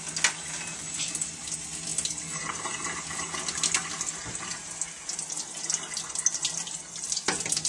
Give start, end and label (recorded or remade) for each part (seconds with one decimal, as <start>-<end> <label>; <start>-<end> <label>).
0.0-7.7 recorded